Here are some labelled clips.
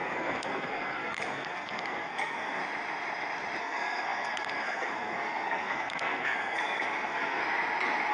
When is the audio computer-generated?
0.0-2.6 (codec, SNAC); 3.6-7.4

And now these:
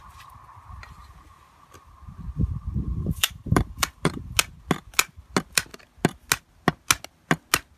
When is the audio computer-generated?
2.9-4.3 (vocoder, BigVGAN v2)

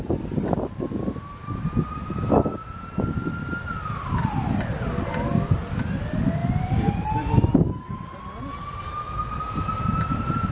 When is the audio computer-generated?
none

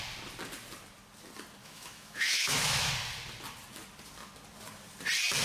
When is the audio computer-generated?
1.6-2.9 (autoencoder, DAC-VAE)

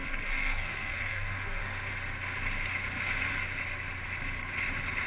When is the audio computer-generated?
0.0-1.6 (codec, SNAC)

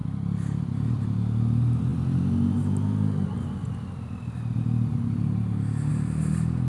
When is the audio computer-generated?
none

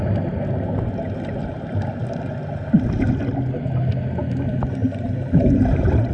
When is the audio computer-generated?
4.8-6.1 (vocoder, BigVGAN v2)